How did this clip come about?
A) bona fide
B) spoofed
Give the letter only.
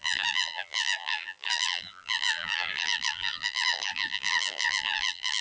B